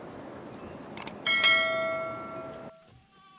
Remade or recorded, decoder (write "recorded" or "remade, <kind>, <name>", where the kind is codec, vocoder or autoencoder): recorded